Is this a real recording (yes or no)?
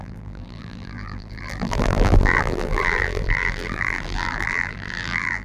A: no